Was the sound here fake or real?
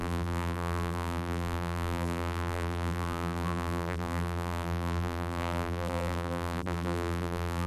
fake